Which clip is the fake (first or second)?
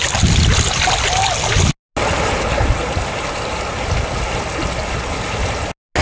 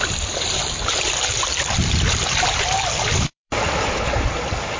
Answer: second